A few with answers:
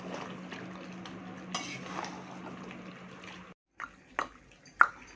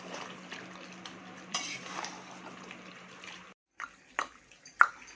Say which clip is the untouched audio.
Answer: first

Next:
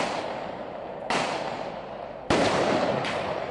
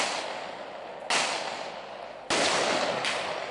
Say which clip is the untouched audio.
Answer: second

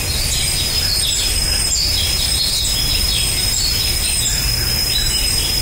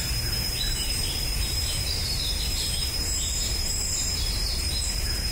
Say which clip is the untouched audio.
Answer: first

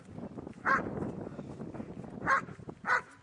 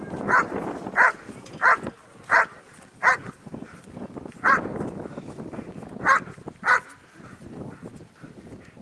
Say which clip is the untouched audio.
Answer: first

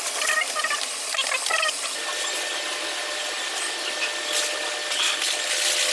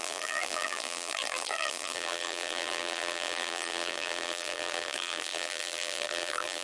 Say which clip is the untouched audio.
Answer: first